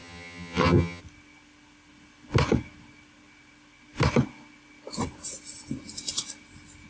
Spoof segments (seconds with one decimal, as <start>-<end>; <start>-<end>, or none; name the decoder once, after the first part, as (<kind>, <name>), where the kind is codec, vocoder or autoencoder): 0.0-1.0 (vocoder, HiFi-GAN)